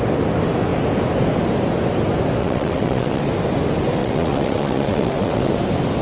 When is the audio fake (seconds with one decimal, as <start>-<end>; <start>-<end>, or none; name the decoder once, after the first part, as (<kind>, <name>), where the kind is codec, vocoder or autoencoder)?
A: 2.4-3.2 (vocoder, WaveNeXt); 4.0-5.6